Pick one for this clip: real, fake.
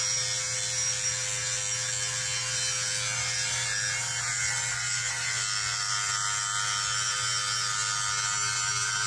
real